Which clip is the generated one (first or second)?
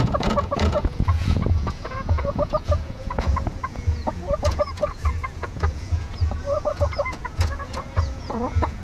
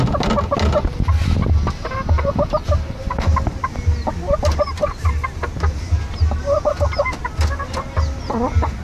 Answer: first